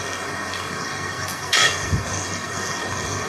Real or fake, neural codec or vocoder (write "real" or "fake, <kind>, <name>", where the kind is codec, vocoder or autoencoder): fake, codec, SNAC